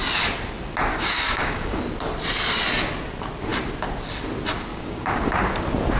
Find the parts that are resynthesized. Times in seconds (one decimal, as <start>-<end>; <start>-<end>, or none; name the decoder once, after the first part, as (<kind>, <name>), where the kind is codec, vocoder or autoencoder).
0.9-1.8 (codec, DAC); 4.7-5.4